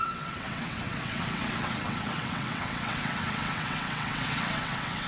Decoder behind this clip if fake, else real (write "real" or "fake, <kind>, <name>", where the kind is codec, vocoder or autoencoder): fake, vocoder, WaveNeXt